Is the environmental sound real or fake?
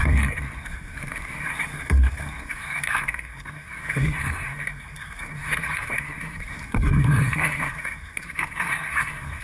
fake